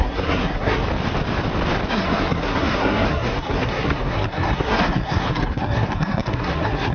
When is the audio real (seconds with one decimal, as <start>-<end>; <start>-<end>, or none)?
0.8-1.9